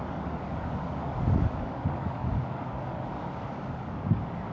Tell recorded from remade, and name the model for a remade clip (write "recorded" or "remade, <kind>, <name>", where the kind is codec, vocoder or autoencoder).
remade, codec, DAC